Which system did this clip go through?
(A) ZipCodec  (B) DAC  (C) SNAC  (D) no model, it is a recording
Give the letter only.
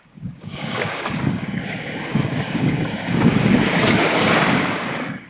B